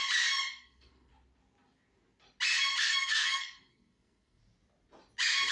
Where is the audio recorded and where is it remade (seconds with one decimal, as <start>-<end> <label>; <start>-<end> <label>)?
0.0-0.5 recorded; 0.5-1.1 remade; 1.1-2.8 recorded; 2.8-4.4 remade; 4.4-5.5 recorded